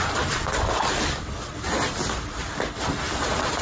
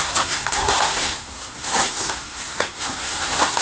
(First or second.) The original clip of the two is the first